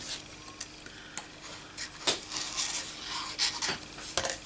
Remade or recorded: recorded